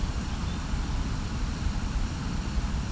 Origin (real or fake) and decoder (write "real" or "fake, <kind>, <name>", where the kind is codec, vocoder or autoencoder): real